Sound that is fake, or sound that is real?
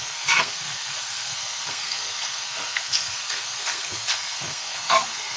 fake